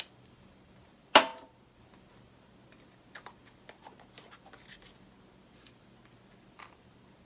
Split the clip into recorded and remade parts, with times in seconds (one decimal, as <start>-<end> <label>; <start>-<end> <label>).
0.0-7.2 recorded